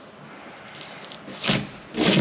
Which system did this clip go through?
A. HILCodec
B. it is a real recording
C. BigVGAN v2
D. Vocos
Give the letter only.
B